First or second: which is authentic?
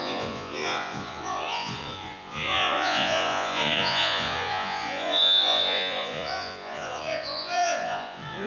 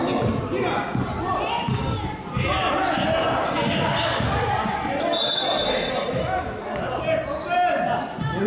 second